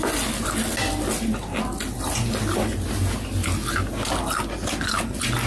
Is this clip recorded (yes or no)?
yes